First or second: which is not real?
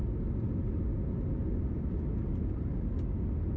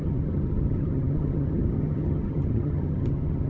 second